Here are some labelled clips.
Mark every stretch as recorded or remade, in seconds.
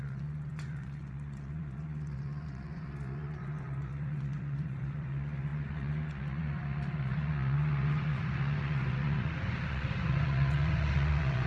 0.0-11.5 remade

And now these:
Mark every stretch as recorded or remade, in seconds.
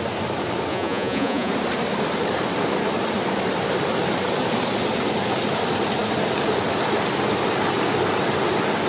0.0-0.7 recorded; 0.7-1.5 remade; 1.5-8.9 recorded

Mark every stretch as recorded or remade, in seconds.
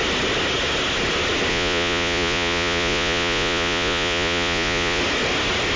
0.0-1.5 recorded; 1.5-5.0 remade; 5.0-5.8 recorded